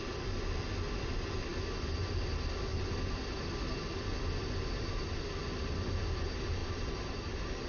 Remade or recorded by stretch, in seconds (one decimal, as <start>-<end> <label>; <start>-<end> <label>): 0.0-6.6 recorded; 6.6-7.7 remade